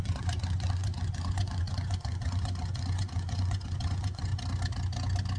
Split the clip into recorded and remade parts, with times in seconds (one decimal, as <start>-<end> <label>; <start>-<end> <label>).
0.0-4.3 remade; 4.3-5.4 recorded